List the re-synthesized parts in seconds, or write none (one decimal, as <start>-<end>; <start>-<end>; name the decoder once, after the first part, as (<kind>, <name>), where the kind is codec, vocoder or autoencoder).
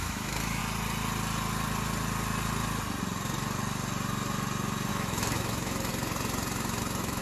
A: 0.0-0.6 (autoencoder, DAC-VAE); 4.9-5.9; 6.8-7.2